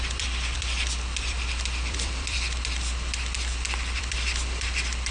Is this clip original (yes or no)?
no